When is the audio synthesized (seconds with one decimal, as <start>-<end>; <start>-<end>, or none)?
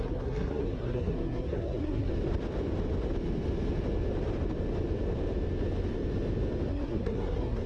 0.0-2.1; 6.7-7.7